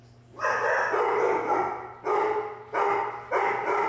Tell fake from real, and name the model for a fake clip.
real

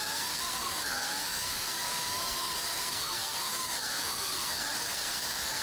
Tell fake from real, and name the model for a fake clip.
fake, codec, SNAC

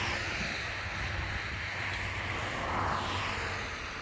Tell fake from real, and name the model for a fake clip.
real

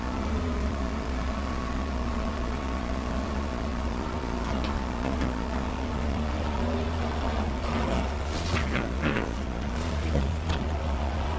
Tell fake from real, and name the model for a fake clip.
fake, vocoder, Vocos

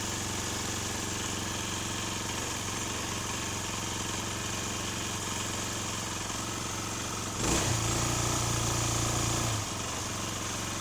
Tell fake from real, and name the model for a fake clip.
real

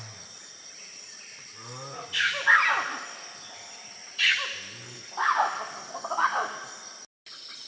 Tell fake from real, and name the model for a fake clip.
real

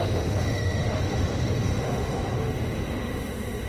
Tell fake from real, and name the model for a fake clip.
fake, autoencoder, DAC-VAE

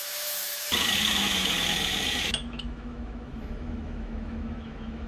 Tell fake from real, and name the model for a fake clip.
fake, autoencoder, DAC-VAE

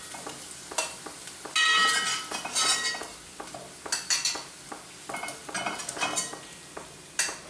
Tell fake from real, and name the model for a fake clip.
real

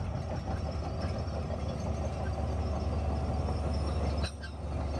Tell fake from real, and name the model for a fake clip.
real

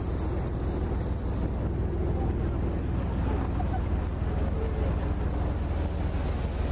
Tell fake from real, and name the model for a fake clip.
real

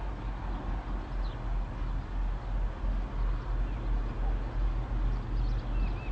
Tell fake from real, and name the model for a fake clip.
real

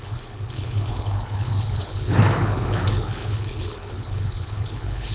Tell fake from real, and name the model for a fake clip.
fake, codec, HILCodec